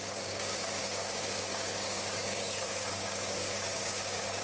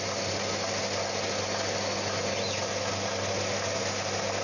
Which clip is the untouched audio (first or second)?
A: second